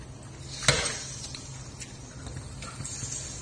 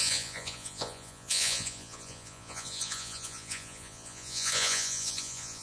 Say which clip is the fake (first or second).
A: second